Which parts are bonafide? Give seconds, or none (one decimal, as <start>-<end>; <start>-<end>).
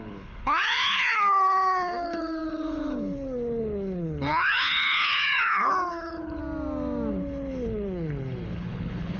6.4-7.1